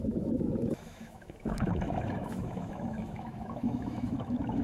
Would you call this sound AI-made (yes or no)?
yes